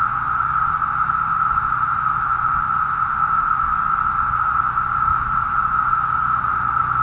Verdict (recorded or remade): recorded